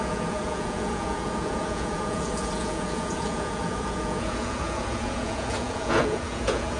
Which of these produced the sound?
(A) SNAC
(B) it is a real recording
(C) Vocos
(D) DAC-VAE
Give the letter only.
C